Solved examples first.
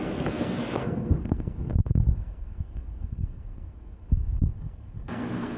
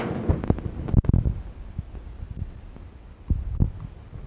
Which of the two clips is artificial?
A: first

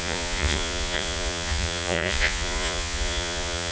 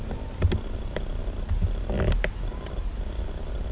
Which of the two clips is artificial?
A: first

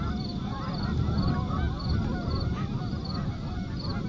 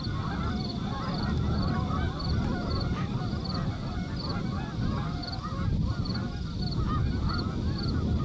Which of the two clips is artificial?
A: second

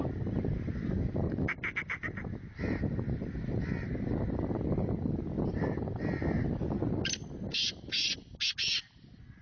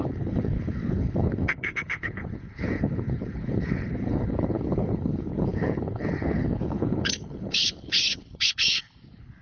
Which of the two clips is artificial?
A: second